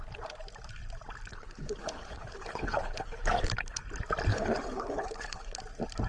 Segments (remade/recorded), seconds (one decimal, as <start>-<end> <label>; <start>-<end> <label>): 0.0-1.3 recorded; 1.3-3.8 remade; 3.8-4.3 recorded; 4.3-5.6 remade; 5.6-6.1 recorded